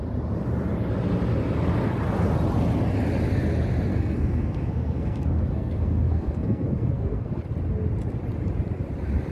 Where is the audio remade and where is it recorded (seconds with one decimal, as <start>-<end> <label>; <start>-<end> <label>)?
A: 0.0-3.9 recorded; 3.9-7.4 remade; 7.4-9.3 recorded